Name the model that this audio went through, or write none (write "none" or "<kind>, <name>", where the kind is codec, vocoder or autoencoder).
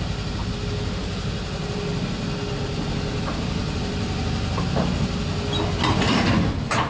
none